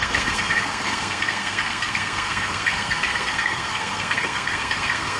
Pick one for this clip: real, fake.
fake